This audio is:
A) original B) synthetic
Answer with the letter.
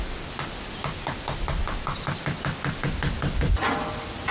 A